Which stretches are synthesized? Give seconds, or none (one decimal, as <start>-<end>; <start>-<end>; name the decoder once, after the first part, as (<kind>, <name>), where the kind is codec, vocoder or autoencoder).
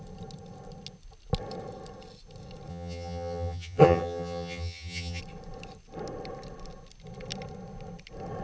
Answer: 2.7-5.2 (vocoder, HiFi-GAN)